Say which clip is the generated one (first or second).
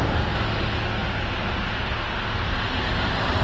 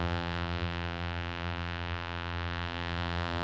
second